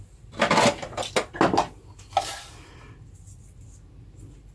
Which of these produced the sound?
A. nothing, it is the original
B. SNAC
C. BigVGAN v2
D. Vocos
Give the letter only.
A